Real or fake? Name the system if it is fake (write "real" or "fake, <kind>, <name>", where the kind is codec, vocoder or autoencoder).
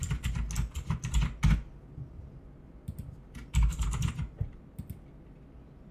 real